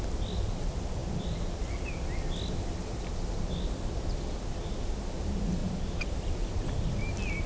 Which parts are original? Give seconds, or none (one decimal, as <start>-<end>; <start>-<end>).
0.0-7.5